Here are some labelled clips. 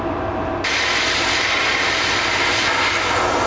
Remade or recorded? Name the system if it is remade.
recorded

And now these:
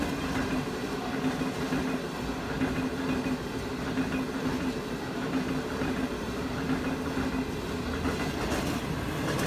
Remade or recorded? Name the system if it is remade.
recorded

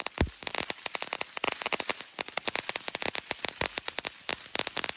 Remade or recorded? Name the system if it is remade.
recorded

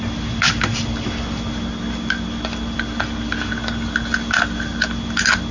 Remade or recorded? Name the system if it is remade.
recorded